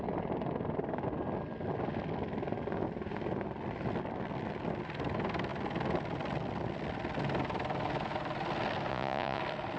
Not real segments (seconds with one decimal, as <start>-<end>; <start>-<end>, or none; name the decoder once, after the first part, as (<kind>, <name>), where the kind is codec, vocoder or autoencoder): 8.9-9.4 (vocoder, Vocos)